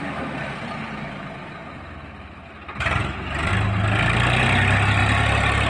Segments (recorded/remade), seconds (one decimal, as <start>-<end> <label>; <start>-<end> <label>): 0.0-5.7 recorded